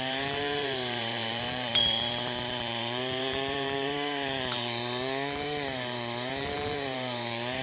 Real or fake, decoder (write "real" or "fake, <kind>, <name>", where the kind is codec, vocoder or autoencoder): fake, vocoder, BigVGAN v2